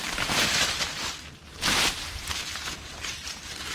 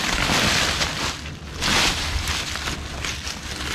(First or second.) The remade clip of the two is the first